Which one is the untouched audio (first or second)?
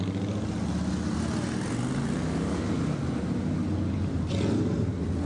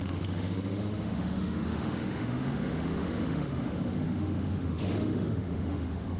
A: first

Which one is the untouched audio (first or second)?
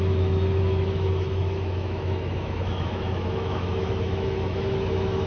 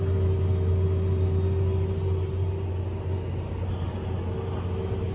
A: second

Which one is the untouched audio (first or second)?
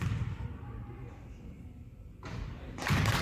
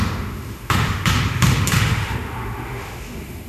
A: first